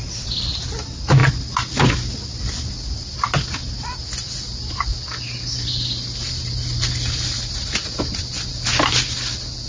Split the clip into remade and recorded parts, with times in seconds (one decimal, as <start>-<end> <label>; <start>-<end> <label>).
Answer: 0.0-9.7 recorded